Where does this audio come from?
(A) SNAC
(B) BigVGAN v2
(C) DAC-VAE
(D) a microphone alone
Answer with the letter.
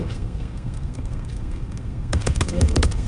A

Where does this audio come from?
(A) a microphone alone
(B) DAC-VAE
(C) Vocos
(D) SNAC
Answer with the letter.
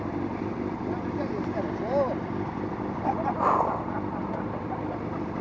A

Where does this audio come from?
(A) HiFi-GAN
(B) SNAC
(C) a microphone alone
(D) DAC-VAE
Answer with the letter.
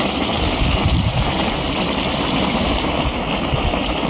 C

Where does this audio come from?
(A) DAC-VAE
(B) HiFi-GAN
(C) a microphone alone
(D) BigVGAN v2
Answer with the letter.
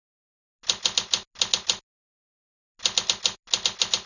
C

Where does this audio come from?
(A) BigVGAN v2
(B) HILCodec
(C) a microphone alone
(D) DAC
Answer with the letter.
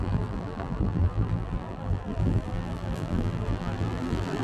A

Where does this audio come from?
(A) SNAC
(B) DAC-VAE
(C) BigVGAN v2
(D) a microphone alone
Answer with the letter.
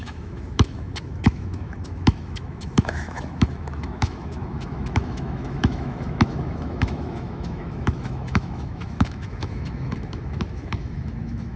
B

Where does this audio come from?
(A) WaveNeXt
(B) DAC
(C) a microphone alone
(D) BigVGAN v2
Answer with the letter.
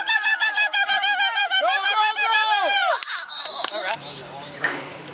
B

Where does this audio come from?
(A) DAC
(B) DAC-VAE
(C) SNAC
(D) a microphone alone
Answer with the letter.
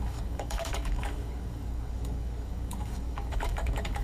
A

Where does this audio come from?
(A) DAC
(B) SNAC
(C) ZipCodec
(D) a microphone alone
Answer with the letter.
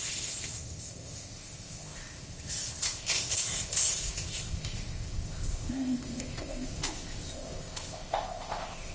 C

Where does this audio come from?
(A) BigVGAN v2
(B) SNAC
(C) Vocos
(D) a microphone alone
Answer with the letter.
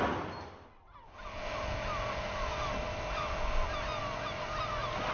D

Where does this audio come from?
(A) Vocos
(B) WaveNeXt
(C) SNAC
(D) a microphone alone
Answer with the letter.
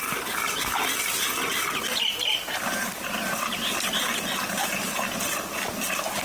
D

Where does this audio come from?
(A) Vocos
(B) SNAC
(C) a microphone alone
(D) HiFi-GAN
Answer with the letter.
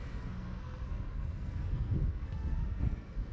B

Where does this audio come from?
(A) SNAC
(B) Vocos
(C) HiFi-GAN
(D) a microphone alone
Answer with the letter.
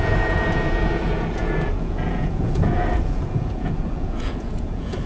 B